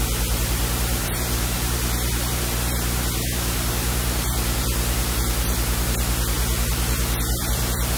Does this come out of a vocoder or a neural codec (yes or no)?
yes